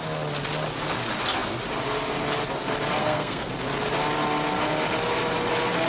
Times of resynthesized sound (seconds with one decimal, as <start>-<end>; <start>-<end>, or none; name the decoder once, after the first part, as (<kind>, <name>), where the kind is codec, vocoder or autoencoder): 3.0-3.5 (codec, SNAC)